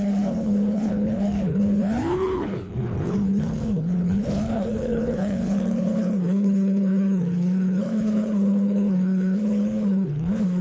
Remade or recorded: remade